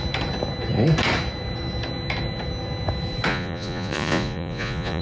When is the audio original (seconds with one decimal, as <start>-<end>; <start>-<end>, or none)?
0.0-3.3